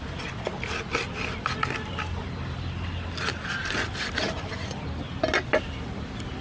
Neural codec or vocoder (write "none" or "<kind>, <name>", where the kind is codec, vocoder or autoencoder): none